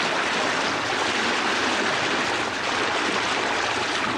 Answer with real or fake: real